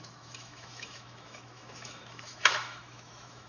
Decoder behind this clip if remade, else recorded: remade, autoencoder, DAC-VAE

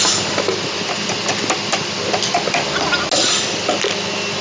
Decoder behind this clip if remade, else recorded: recorded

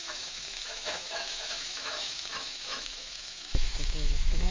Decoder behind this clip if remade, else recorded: remade, autoencoder, DAC-VAE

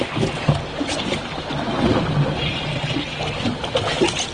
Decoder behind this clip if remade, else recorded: recorded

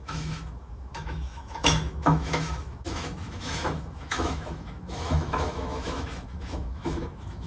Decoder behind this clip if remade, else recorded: remade, autoencoder, DAC-VAE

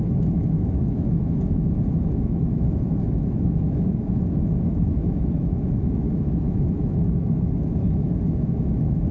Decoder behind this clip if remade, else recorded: remade, autoencoder, DAC-VAE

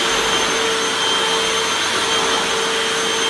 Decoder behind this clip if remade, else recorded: recorded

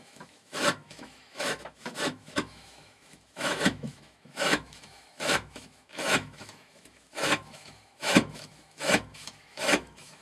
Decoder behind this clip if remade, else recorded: remade, autoencoder, DAC-VAE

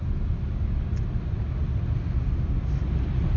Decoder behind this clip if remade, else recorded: recorded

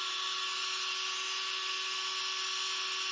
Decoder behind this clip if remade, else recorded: recorded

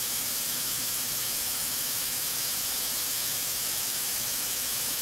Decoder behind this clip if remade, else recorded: remade, autoencoder, DAC-VAE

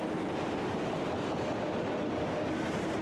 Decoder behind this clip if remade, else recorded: recorded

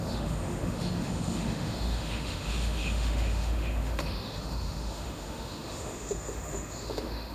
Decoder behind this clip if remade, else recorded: remade, autoencoder, DAC-VAE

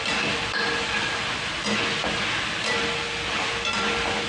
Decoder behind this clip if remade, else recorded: recorded